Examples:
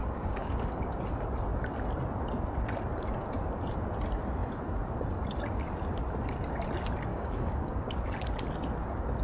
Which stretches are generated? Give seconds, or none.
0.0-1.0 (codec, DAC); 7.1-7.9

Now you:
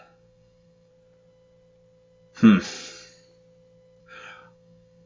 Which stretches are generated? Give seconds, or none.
0.0-0.9 (codec, DAC); 4.0-5.1